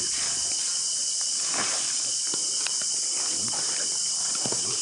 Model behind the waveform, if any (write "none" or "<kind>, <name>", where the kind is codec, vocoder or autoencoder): none